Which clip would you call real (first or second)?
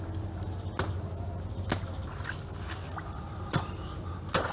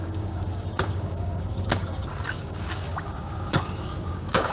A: first